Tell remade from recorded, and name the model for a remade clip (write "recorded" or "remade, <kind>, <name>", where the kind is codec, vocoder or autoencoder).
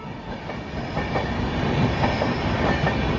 recorded